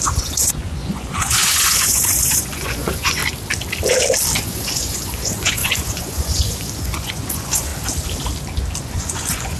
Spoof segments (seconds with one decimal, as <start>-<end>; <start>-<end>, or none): 0.0-3.2; 4.4-7.7; 8.8-9.6